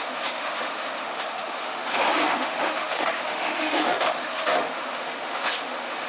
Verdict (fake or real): fake